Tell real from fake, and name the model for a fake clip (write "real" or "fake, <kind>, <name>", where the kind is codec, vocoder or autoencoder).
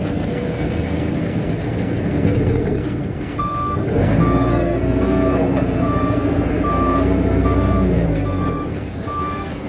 fake, codec, SNAC